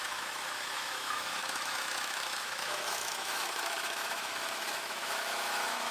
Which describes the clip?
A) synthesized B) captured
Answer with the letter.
A